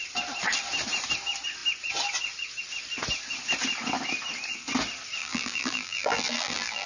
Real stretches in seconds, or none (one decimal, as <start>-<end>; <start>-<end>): 0.0-5.2